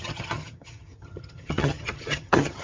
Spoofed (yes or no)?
yes